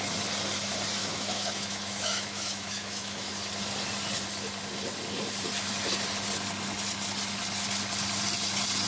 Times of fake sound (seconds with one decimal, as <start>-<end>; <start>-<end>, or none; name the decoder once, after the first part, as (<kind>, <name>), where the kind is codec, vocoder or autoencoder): 1.0-3.3 (autoencoder, DAC-VAE)